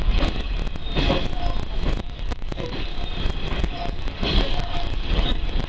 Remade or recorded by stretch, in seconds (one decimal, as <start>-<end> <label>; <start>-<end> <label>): 0.0-0.6 remade; 0.6-2.0 recorded; 2.0-2.9 remade; 2.9-3.6 recorded; 3.6-5.7 remade